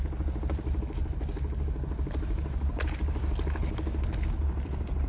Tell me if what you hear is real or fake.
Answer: real